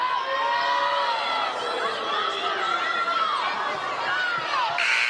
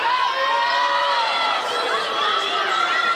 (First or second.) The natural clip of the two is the first